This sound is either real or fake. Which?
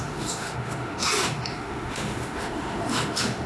fake